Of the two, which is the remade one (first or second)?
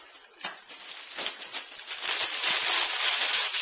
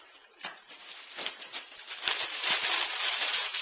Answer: second